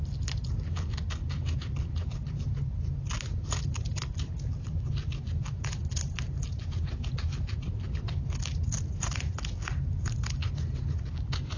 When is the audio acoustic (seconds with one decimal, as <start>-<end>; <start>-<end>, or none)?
0.0-11.6